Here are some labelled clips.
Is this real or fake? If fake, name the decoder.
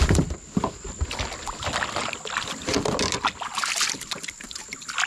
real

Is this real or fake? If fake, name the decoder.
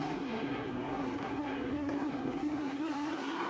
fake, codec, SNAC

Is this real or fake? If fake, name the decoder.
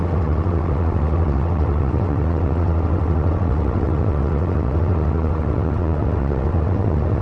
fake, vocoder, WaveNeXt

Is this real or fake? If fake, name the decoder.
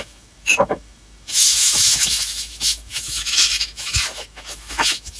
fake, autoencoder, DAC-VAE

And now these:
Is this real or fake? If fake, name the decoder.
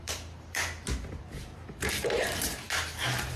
fake, vocoder, BigVGAN v2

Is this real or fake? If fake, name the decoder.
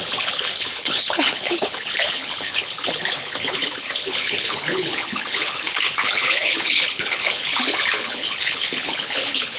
fake, codec, HILCodec